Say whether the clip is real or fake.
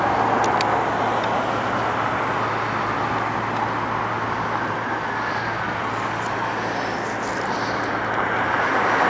real